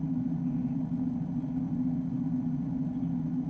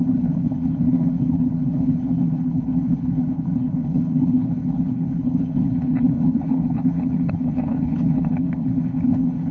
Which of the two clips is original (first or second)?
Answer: first